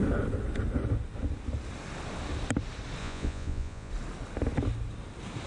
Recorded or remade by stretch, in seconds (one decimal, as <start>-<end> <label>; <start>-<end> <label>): 0.0-3.0 recorded; 3.0-3.9 remade; 3.9-5.5 recorded